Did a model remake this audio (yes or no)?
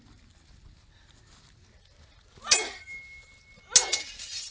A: no